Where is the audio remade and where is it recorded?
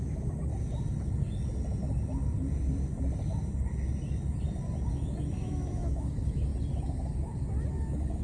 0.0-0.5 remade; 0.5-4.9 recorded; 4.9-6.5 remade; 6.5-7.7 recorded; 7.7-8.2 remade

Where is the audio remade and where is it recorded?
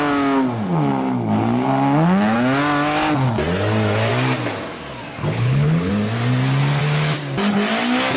0.0-5.2 recorded; 5.2-5.9 remade; 5.9-8.2 recorded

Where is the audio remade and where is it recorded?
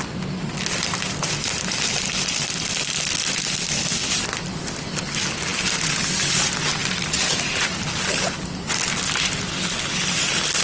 0.0-10.6 recorded